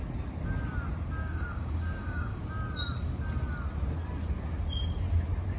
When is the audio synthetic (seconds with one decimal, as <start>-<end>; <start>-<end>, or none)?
1.2-2.4